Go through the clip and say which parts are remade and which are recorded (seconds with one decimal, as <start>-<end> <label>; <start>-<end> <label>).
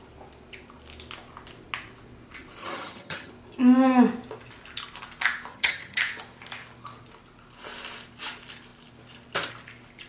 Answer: 0.0-2.6 recorded; 2.6-3.3 remade; 3.3-5.5 recorded; 5.5-6.0 remade; 6.0-10.1 recorded